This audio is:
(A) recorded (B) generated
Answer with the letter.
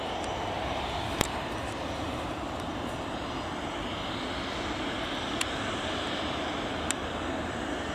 B